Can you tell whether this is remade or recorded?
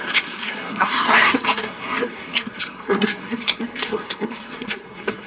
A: remade